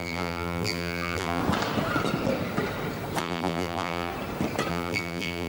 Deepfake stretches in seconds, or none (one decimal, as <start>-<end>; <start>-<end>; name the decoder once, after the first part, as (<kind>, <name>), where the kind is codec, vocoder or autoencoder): 0.0-1.4 (vocoder, BigVGAN v2); 3.2-4.1; 4.7-5.5